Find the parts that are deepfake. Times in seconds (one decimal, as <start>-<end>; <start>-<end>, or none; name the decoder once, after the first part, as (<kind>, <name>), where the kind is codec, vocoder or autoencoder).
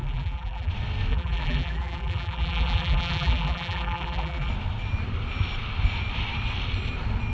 0.0-0.7 (vocoder, BigVGAN v2); 1.1-4.5